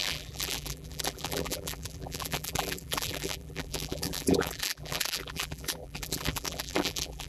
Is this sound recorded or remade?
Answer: remade